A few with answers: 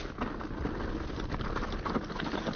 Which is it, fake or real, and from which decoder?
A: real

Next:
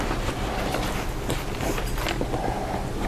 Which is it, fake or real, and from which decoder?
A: real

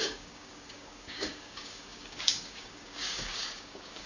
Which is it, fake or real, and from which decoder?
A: fake, codec, DAC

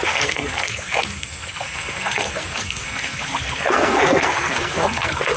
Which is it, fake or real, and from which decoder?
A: fake, codec, SNAC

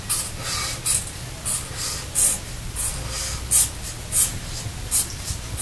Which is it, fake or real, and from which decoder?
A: real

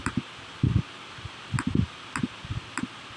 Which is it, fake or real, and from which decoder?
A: real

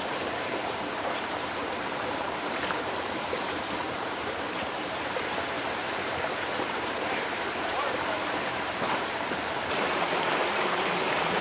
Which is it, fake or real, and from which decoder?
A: fake, vocoder, BigVGAN v2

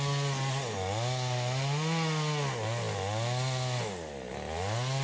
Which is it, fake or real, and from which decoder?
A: real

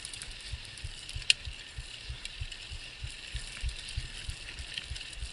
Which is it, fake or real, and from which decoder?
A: real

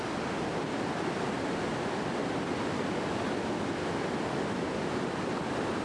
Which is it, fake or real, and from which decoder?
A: real